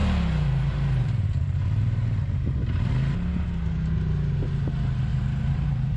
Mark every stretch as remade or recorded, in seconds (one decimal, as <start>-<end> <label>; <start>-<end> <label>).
0.0-2.9 remade; 2.9-5.1 recorded; 5.1-6.0 remade